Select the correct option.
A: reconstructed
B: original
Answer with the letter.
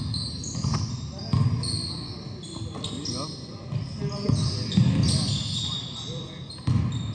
B